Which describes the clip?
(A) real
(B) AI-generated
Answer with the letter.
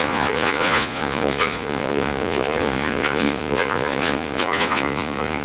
B